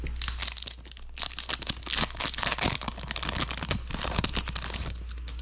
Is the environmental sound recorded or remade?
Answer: recorded